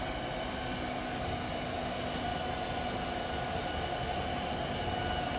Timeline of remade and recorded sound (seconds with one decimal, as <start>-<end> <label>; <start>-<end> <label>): 0.0-5.4 recorded